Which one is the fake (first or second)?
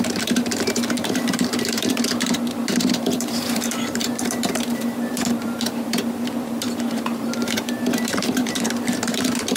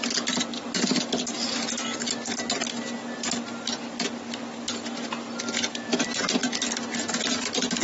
first